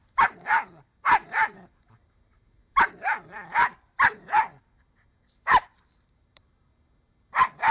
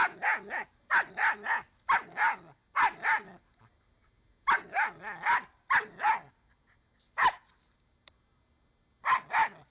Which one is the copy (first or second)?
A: first